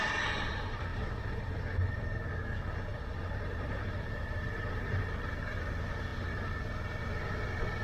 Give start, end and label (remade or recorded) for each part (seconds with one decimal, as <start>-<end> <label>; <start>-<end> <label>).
0.0-0.9 recorded; 0.9-1.4 remade; 1.4-2.9 recorded; 2.9-5.3 remade; 5.3-7.8 recorded